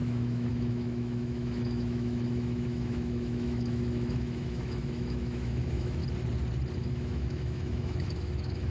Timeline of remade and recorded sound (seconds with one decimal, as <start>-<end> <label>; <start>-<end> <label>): 0.0-6.0 remade; 6.0-6.8 recorded; 6.8-8.7 remade